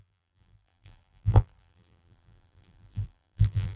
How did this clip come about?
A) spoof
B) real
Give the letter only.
A